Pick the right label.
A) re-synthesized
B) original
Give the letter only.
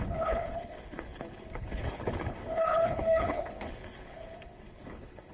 A